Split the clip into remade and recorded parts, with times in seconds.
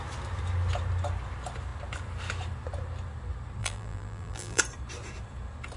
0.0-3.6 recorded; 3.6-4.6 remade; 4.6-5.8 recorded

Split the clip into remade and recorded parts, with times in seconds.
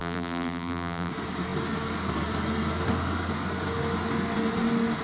0.0-1.1 remade; 1.1-5.0 recorded